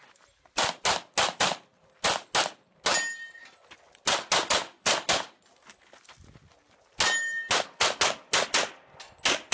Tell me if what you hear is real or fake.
real